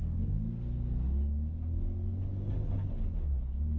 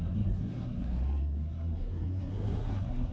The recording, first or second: first